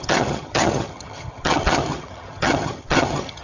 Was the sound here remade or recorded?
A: remade